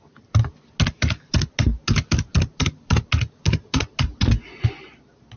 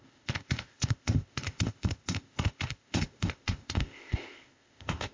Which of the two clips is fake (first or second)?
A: second